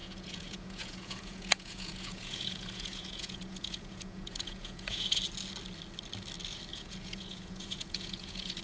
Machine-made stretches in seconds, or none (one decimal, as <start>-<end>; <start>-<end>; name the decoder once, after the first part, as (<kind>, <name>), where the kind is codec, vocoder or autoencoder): 0.0-5.2 (vocoder, Vocos); 6.7-8.6